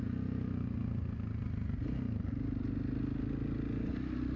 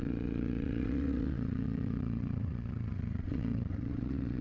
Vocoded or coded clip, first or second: second